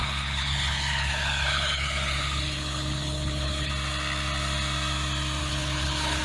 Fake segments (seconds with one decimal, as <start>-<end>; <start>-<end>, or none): 0.0-3.7; 5.4-6.2